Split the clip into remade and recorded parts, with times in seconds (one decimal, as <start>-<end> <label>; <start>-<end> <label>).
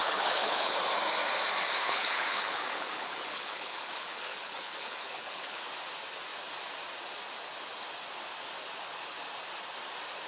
0.0-0.8 remade; 0.8-1.6 recorded; 1.6-5.7 remade; 5.7-10.3 recorded